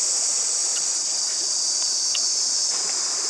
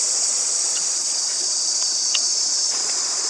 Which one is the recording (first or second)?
first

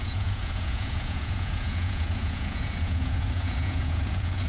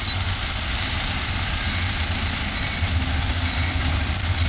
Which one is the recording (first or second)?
second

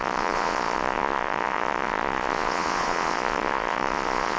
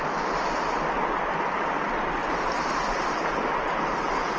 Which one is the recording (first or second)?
second